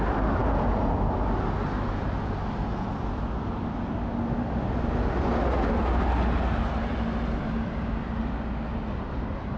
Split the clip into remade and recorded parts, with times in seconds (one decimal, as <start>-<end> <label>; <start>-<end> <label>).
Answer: 0.0-9.6 recorded